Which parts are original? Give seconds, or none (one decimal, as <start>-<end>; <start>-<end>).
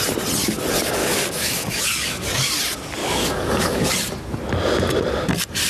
0.0-1.0; 2.5-3.0; 3.9-5.7